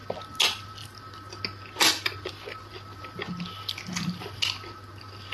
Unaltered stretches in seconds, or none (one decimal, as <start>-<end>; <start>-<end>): 0.0-5.3